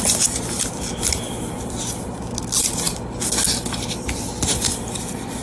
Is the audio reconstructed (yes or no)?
no